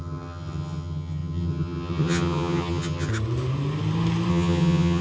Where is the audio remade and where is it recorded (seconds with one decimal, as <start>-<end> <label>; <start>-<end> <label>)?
0.0-3.1 remade; 3.1-4.3 recorded; 4.3-5.0 remade